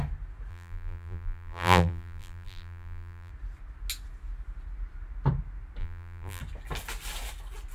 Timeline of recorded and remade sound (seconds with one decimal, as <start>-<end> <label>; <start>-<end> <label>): 0.0-0.5 recorded; 0.5-3.3 remade; 3.3-5.8 recorded; 5.8-6.4 remade; 6.4-7.7 recorded